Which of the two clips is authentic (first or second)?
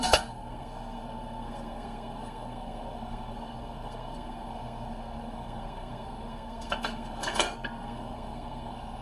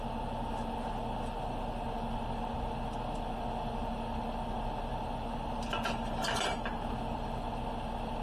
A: second